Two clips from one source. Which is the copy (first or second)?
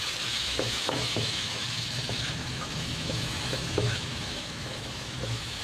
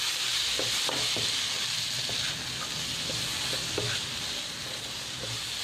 first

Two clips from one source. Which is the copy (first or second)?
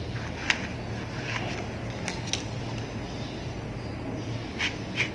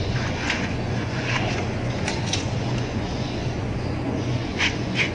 second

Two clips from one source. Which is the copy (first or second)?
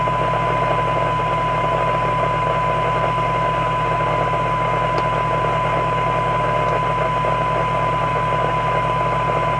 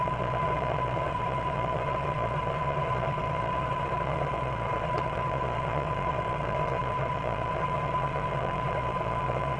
second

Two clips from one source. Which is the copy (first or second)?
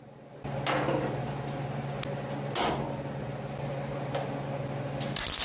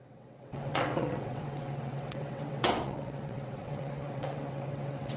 second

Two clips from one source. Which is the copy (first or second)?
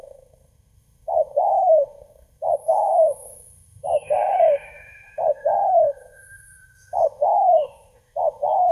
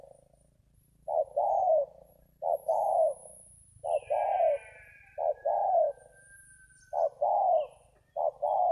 first